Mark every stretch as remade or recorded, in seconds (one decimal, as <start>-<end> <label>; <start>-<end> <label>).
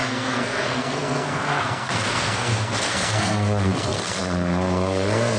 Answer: 0.0-5.4 remade